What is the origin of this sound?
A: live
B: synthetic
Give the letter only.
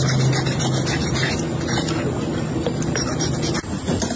A